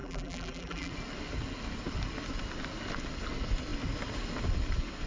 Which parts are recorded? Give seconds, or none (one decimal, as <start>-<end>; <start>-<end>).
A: 0.9-5.1